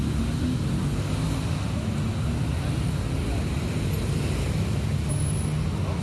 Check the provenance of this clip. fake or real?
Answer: real